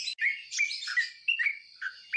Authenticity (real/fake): real